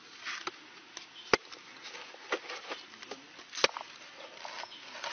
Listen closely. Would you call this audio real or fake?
real